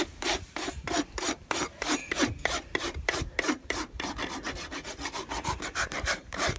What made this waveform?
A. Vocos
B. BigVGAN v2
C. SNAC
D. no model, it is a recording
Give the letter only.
B